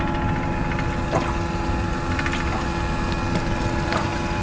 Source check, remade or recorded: recorded